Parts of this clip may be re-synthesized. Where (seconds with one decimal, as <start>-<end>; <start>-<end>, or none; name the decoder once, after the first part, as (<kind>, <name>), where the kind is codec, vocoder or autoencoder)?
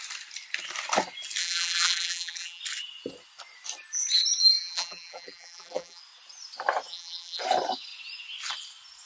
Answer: 1.4-2.6 (vocoder, BigVGAN v2); 4.6-6.0; 6.9-7.4